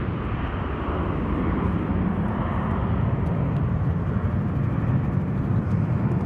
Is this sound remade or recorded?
recorded